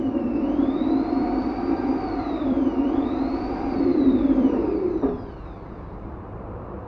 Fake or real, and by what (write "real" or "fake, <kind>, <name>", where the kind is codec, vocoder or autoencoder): fake, vocoder, BigVGAN v2